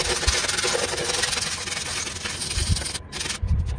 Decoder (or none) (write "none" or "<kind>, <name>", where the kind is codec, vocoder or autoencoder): none